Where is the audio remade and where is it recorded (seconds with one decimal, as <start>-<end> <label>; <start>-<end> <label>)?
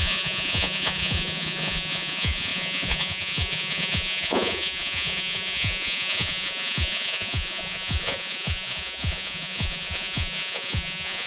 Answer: 0.0-11.3 remade